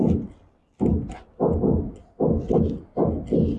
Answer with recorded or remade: recorded